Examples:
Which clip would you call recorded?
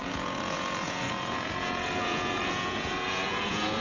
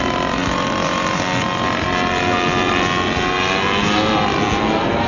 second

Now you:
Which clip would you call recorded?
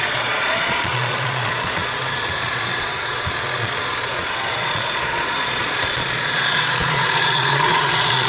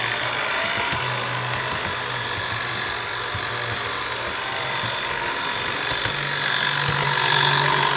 second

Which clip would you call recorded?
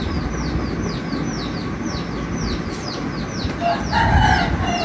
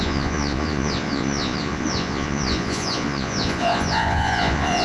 first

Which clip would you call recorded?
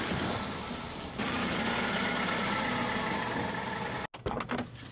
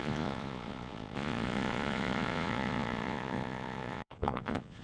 first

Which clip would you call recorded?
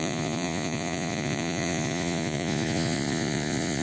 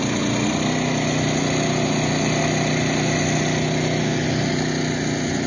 second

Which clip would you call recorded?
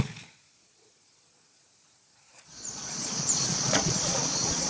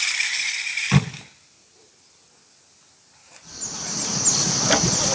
second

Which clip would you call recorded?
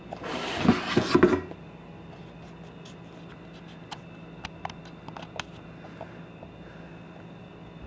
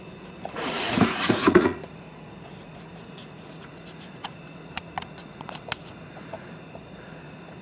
first